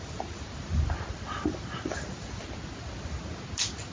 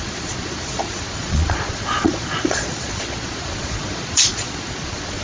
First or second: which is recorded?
first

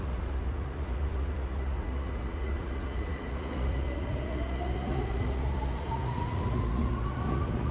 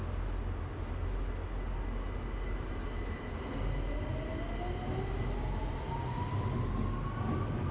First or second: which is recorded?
second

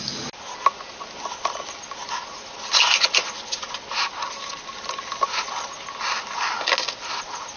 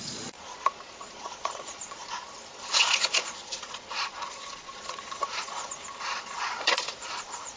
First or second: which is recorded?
first